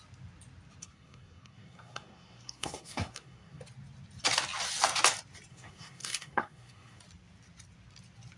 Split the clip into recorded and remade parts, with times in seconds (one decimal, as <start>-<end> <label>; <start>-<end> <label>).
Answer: 0.0-0.8 recorded; 0.8-3.6 remade; 3.6-5.5 recorded; 5.5-7.0 remade; 7.0-8.4 recorded